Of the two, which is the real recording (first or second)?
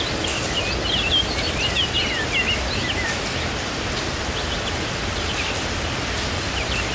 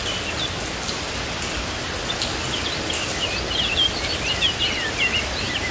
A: first